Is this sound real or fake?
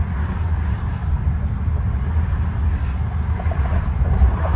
real